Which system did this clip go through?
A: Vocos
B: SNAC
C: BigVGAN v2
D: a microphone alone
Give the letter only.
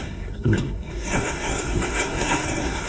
B